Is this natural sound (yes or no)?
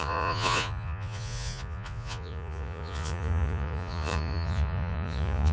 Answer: no